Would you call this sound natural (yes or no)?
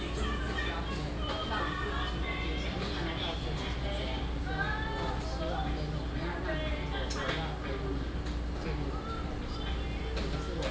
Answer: yes